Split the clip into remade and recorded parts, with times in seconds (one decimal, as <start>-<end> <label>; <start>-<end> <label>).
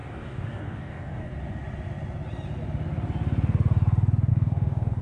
0.0-1.3 remade; 1.3-4.3 recorded; 4.3-5.0 remade